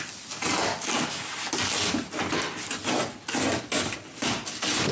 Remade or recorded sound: recorded